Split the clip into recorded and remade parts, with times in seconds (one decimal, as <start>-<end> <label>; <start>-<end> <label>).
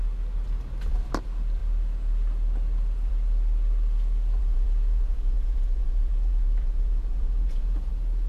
0.0-4.4 recorded; 4.4-7.9 remade; 7.9-8.3 recorded